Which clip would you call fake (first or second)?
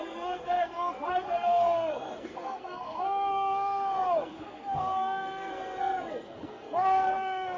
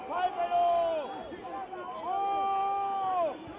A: first